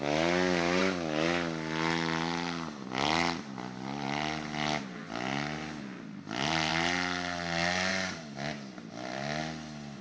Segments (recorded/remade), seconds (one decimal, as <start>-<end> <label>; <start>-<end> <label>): 0.0-10.0 recorded